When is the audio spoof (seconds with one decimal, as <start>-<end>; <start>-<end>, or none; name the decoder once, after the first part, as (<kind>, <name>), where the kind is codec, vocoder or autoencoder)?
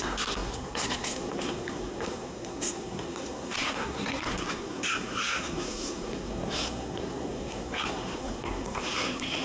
0.0-9.4 (codec, SNAC)